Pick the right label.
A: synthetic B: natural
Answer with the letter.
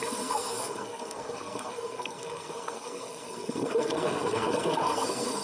A